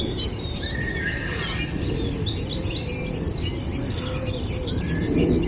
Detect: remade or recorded recorded